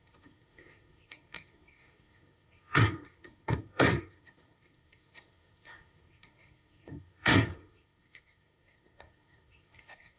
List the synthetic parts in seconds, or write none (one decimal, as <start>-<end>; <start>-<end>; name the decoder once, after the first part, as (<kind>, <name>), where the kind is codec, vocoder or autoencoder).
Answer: 0.0-10.2 (codec, SNAC)